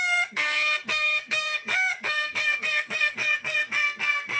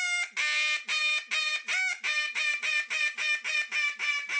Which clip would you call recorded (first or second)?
second